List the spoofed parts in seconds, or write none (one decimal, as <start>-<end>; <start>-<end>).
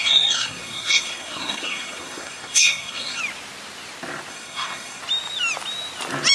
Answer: 0.0-3.2; 4.3-5.0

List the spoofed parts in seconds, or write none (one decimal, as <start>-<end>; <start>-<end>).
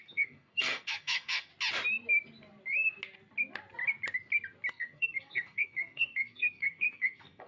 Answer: 0.0-1.5; 4.7-7.5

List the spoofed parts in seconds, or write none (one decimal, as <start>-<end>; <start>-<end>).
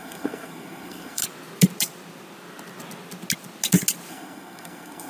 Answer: 0.0-1.2; 4.1-5.1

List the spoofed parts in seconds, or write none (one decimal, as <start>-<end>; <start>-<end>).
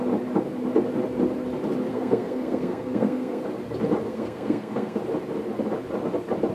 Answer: 1.9-3.4; 4.1-5.0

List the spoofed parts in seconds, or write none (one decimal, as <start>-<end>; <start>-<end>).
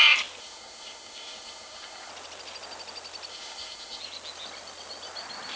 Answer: 0.4-2.1; 3.3-4.0